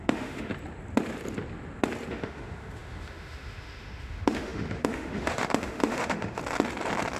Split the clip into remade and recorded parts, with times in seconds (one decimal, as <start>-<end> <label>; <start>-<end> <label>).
0.0-0.5 remade; 0.5-2.1 recorded; 2.1-6.4 remade; 6.4-7.2 recorded